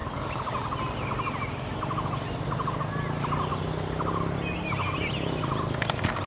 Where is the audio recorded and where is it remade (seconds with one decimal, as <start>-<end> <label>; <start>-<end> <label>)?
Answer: 0.0-6.3 recorded